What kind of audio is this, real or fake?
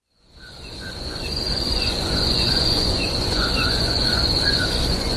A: fake